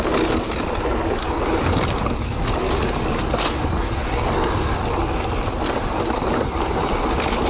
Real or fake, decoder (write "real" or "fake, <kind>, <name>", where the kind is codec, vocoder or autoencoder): real